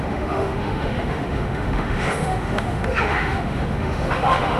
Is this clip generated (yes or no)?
yes